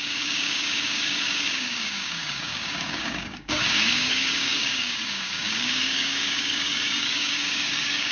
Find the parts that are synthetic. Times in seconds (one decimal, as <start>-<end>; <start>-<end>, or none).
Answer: 0.0-8.1